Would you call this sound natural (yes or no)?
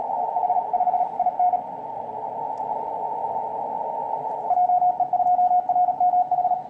yes